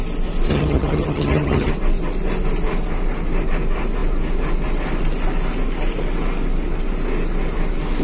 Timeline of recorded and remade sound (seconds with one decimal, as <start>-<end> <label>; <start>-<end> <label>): 0.0-0.5 recorded; 0.5-1.7 remade; 1.7-8.0 recorded